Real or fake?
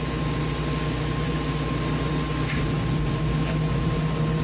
real